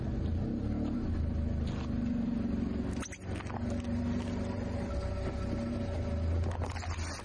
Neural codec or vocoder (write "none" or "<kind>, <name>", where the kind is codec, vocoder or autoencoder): none